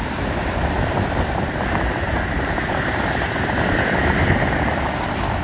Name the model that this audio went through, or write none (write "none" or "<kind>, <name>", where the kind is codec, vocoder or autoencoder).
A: none